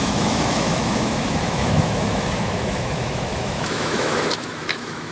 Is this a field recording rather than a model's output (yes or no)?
no